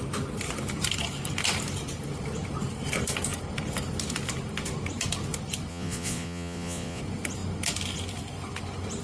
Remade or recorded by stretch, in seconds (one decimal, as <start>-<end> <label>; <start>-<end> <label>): 0.0-5.7 recorded; 5.7-7.0 remade; 7.0-9.0 recorded